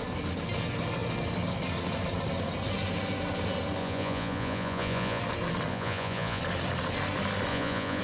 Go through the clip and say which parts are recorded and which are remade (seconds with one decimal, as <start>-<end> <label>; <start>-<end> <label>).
0.0-3.8 recorded; 3.8-5.2 remade; 5.2-5.7 recorded; 5.7-6.4 remade; 6.4-7.5 recorded; 7.5-8.0 remade